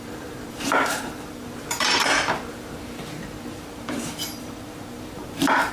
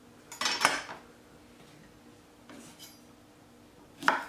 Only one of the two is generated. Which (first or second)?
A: first